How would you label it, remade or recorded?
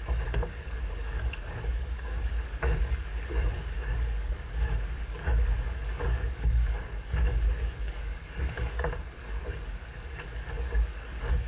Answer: remade